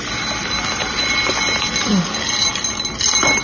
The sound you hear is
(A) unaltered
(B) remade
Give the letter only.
A